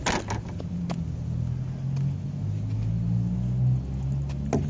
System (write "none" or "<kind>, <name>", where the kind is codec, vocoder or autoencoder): none